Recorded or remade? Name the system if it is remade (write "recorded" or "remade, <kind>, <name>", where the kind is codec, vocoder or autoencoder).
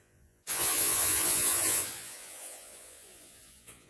remade, vocoder, Vocos